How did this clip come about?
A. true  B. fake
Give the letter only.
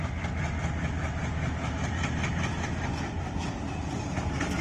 A